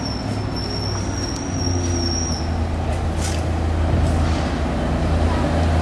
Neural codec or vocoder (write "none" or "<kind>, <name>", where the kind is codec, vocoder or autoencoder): none